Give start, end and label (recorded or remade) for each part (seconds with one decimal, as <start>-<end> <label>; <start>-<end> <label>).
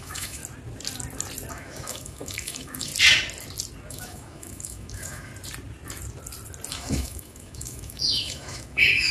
0.0-0.4 remade; 0.4-1.5 recorded; 1.5-2.9 remade; 2.9-3.9 recorded; 3.9-5.3 remade; 5.3-6.7 recorded; 6.7-9.1 remade